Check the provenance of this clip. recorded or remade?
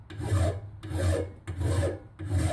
recorded